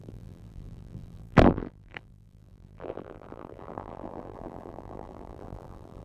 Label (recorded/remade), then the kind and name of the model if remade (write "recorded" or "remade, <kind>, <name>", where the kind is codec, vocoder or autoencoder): remade, vocoder, BigVGAN v2